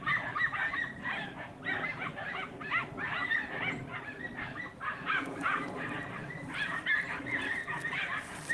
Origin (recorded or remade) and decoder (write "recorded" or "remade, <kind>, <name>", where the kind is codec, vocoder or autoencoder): recorded